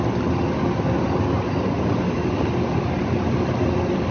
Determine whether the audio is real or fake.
real